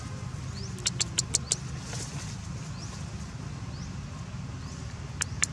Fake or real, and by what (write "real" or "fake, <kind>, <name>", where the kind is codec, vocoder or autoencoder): real